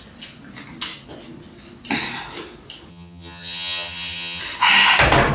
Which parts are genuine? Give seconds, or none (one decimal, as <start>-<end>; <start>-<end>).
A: 0.0-2.9; 4.4-5.3